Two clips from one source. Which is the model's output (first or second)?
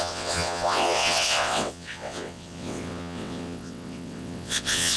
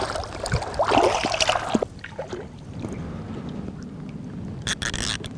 first